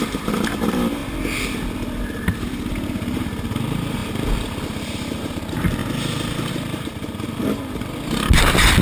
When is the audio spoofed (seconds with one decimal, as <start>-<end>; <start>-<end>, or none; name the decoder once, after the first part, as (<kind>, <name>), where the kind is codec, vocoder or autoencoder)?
0.0-1.0 (vocoder, BigVGAN v2); 2.0-4.0; 5.2-5.8; 6.5-8.8

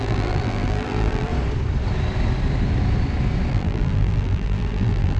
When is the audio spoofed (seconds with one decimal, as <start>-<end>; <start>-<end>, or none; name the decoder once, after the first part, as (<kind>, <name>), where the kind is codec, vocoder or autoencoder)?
0.0-1.3 (vocoder, BigVGAN v2); 3.5-5.2

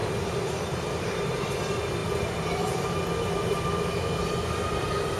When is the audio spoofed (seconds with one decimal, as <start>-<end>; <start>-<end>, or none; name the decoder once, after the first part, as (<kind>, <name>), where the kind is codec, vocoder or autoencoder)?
0.0-1.6 (vocoder, BigVGAN v2); 2.0-3.0

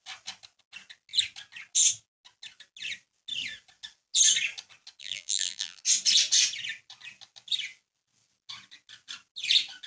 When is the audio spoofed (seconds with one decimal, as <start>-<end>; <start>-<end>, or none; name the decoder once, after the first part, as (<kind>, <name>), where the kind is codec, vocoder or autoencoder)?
5.0-5.8 (vocoder, BigVGAN v2)

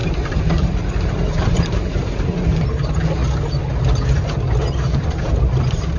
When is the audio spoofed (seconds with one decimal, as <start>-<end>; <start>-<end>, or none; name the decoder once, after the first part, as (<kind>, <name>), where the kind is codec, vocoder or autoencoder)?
0.0-3.2 (vocoder, BigVGAN v2); 4.6-6.0